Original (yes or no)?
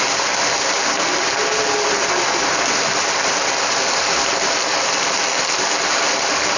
yes